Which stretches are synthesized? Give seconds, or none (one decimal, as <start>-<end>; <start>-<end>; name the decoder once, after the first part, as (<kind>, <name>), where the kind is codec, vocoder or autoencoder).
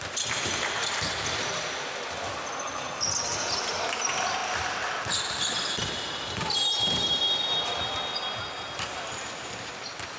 none